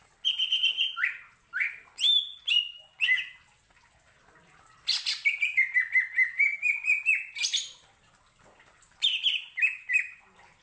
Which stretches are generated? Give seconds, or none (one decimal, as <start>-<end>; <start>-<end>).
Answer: none